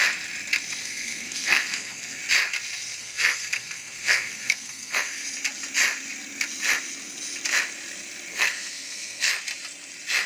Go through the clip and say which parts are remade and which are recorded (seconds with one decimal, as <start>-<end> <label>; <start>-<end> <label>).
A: 0.0-0.8 recorded; 0.8-2.2 remade; 2.2-3.0 recorded; 3.0-5.2 remade; 5.2-8.3 recorded; 8.3-9.3 remade; 9.3-10.3 recorded

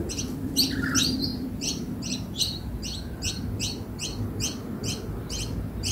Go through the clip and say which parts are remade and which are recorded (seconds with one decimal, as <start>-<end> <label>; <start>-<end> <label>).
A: 0.0-1.3 recorded; 1.3-3.3 remade; 3.3-5.9 recorded

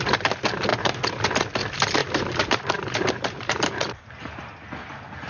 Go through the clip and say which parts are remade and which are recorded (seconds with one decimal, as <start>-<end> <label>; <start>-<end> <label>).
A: 0.0-0.7 recorded; 0.7-1.2 remade; 1.2-2.0 recorded; 2.0-3.9 remade; 3.9-5.3 recorded

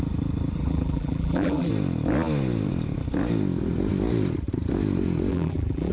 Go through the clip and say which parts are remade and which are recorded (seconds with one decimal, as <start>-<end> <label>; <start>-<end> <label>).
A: 0.0-0.6 recorded; 0.6-1.7 remade; 1.7-5.3 recorded; 5.3-5.9 remade